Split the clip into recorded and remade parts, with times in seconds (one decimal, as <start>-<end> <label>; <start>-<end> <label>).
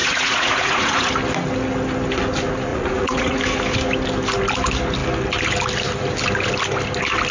0.0-1.1 remade; 1.1-2.7 recorded; 2.7-3.4 remade; 3.4-7.3 recorded